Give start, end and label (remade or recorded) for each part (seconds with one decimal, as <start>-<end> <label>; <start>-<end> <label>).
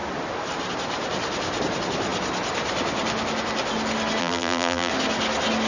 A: 0.0-4.2 recorded; 4.2-4.9 remade; 4.9-5.7 recorded